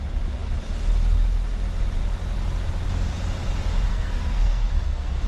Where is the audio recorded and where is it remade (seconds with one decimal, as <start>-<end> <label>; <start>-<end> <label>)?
0.0-3.9 recorded; 3.9-5.3 remade